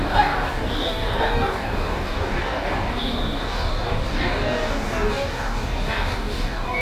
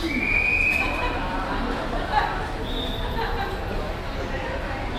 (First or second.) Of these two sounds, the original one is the second